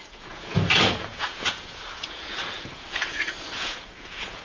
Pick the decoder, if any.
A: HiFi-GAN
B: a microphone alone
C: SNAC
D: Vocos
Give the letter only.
D